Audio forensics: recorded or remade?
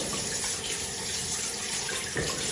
remade